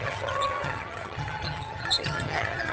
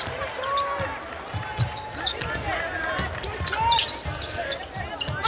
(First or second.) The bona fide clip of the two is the second